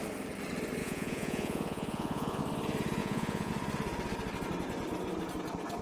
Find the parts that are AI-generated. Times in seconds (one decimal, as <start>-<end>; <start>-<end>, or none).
0.8-2.4; 3.0-3.5